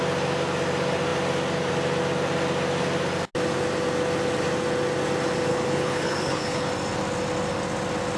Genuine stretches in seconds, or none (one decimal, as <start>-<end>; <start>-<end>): 0.0-5.5; 6.7-8.2

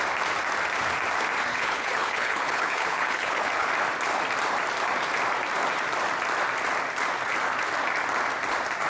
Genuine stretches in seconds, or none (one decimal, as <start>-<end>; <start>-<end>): 0.0-1.5; 3.7-8.9